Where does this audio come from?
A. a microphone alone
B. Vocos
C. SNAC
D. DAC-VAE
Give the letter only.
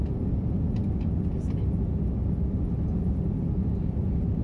A